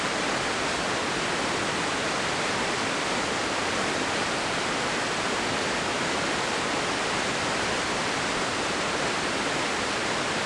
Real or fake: fake